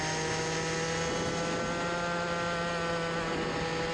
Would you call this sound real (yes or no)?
yes